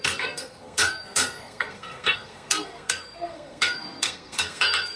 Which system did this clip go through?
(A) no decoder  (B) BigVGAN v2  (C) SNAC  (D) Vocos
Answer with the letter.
C